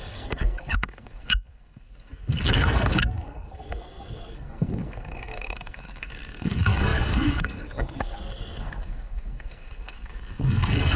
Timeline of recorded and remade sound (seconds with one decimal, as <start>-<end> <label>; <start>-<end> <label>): 0.0-11.0 remade